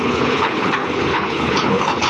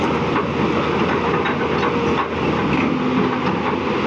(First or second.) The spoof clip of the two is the first